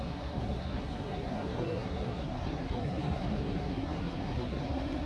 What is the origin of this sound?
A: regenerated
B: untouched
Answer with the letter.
A